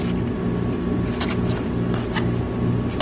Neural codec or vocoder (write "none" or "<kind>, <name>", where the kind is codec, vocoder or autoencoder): none